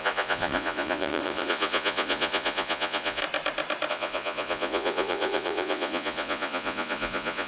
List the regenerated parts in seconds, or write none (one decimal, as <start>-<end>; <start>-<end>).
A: 0.0-3.2; 3.9-7.5